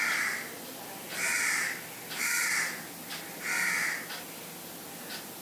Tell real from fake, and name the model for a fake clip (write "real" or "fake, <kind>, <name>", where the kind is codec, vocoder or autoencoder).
real